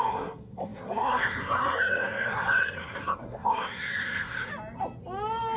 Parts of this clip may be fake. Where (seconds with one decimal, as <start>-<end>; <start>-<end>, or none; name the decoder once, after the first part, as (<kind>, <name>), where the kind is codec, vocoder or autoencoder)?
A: 0.0-4.5 (codec, SNAC)